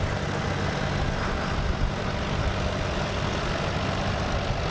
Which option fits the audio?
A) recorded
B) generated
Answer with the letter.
A